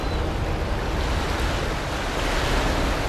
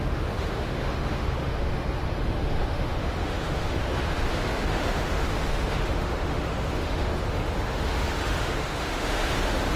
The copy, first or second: second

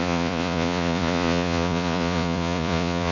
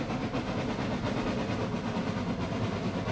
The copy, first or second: first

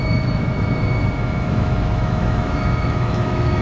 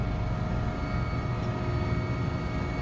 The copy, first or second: first